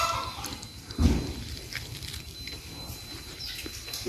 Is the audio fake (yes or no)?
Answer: no